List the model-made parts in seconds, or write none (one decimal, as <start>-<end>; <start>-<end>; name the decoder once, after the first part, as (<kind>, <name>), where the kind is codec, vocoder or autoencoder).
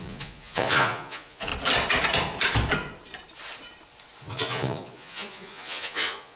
0.0-1.5 (vocoder, Vocos); 4.2-6.4